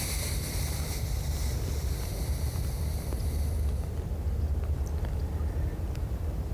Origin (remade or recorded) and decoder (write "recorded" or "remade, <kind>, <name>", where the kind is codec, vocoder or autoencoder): recorded